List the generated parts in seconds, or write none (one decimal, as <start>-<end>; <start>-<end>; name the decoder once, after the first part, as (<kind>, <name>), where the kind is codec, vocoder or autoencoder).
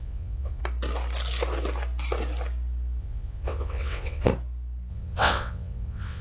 0.0-0.6 (vocoder, WaveNeXt); 3.0-4.3; 4.9-6.2